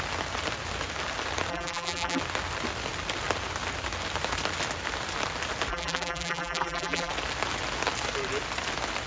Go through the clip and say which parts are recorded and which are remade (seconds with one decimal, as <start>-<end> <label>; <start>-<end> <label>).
0.0-1.5 recorded; 1.5-2.2 remade; 2.2-5.7 recorded; 5.7-7.1 remade; 7.1-9.1 recorded